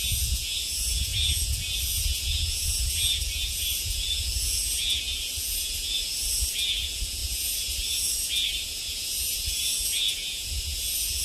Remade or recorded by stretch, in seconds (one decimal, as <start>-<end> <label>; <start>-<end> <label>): 0.0-11.2 remade